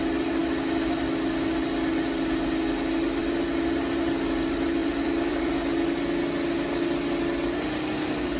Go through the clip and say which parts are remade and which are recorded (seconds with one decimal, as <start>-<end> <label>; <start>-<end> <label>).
0.0-4.8 recorded; 4.8-5.5 remade; 5.5-8.4 recorded